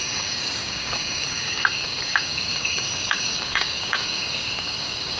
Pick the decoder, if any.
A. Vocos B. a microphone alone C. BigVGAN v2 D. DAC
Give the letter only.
D